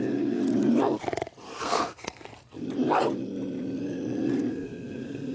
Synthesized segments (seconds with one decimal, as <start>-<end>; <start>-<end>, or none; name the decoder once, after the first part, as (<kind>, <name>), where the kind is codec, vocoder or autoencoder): 0.0-0.4 (codec, SNAC); 1.6-2.3; 4.5-5.3